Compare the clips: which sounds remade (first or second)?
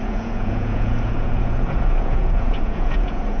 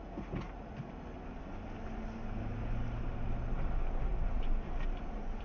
first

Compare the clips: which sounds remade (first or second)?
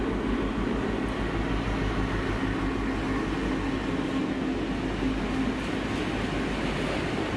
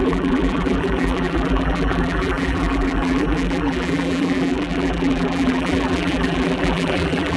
second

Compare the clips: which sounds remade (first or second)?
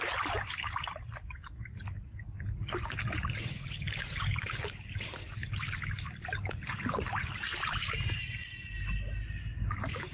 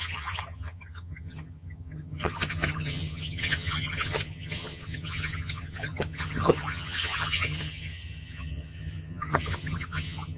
second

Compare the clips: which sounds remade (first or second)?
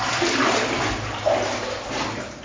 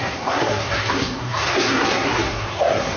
second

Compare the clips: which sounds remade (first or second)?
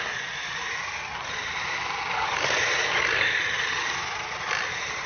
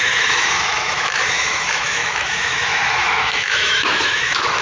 second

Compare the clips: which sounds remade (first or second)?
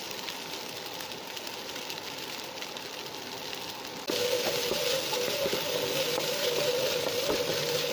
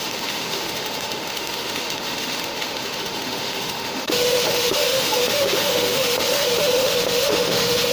second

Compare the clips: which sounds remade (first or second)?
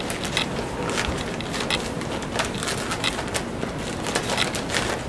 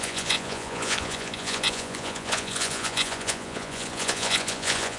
second